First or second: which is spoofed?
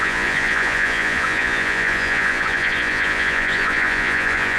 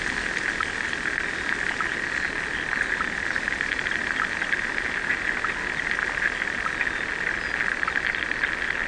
first